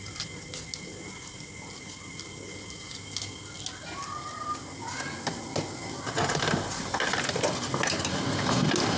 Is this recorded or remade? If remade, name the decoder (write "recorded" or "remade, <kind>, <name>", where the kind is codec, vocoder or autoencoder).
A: recorded